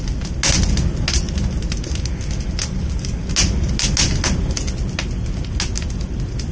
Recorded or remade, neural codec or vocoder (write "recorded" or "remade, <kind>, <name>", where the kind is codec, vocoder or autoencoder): recorded